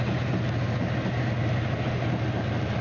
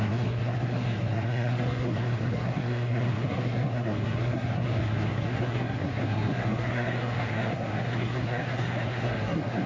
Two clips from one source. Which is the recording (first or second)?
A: first